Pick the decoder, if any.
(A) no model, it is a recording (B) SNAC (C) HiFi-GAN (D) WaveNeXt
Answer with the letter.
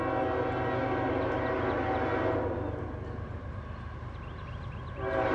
A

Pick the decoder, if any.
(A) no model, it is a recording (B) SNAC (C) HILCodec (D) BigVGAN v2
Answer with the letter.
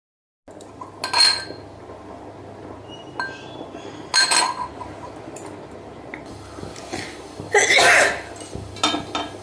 A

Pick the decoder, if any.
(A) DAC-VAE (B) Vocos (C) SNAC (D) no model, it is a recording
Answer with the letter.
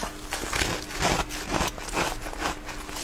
D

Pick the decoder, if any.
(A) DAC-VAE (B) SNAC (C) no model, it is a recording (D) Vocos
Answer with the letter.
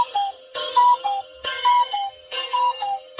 B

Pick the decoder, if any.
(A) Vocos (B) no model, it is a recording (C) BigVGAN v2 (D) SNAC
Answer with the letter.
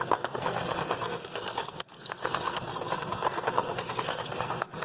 D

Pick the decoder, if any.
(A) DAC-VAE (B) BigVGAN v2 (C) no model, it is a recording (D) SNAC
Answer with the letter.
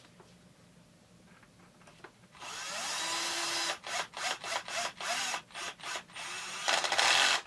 C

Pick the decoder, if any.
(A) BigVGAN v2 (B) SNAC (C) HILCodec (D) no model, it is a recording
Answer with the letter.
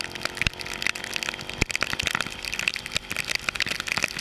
D